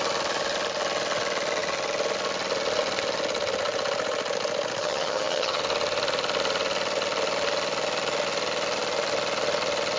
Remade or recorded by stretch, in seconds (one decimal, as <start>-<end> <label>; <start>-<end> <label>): 0.0-4.8 recorded; 4.8-5.6 remade; 5.6-10.0 recorded